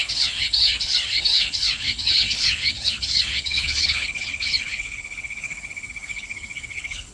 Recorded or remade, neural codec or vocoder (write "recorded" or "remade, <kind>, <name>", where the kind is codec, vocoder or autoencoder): remade, codec, HILCodec